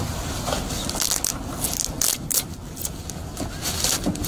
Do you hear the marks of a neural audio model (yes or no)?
no